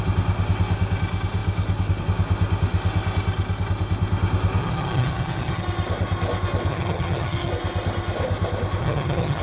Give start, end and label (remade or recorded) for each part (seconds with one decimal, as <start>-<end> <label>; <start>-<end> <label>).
0.0-4.6 recorded; 4.6-5.6 remade; 5.6-6.7 recorded; 6.7-7.5 remade; 7.5-8.8 recorded; 8.8-9.4 remade